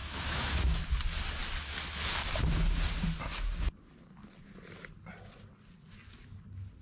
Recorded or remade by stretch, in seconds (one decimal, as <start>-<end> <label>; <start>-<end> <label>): 0.0-0.8 remade; 0.8-6.8 recorded